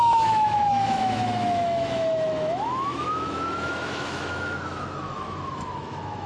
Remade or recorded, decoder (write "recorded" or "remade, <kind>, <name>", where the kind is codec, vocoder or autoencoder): remade, autoencoder, DAC-VAE